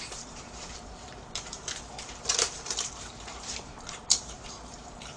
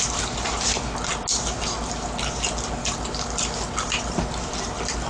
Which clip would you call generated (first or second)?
first